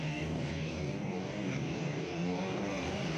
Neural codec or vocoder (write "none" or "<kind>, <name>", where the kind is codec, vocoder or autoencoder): codec, DAC